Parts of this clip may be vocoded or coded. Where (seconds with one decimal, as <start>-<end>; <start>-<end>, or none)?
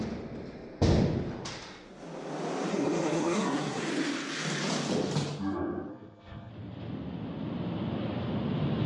2.7-3.8; 5.9-6.5